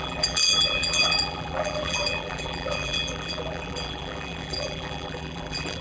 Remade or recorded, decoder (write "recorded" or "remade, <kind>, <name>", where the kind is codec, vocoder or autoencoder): remade, vocoder, BigVGAN v2